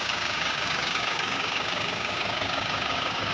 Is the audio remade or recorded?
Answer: remade